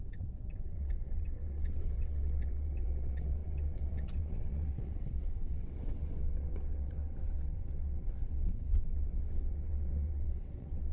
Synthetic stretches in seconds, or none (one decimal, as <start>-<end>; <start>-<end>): 0.0-10.9